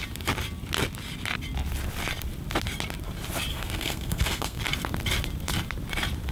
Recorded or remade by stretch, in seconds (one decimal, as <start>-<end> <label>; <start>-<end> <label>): 0.0-3.5 recorded; 3.5-4.6 remade; 4.6-6.3 recorded